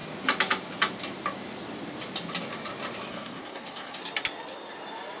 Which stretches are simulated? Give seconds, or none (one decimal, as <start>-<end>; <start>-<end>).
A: 3.1-4.0